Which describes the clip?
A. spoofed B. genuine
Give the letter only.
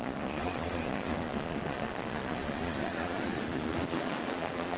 A